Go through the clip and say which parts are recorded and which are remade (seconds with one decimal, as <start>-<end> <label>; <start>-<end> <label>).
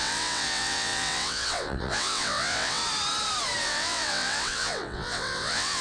0.0-2.8 remade; 2.8-3.6 recorded; 3.6-5.8 remade